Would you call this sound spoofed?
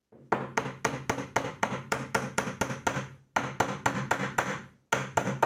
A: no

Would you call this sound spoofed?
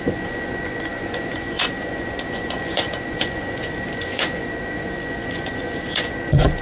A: yes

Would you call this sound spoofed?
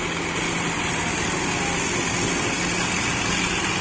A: no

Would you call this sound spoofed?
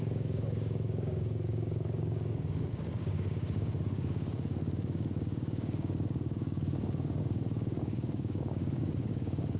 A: yes